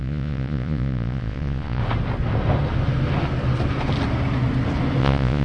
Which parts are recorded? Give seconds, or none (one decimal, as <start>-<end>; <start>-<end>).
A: 1.8-5.0